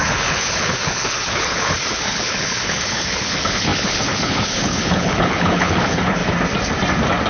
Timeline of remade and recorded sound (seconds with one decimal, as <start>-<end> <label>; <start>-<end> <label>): 0.0-6.2 remade; 6.2-7.3 recorded